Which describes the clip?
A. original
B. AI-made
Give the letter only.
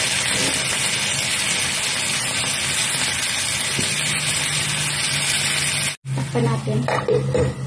A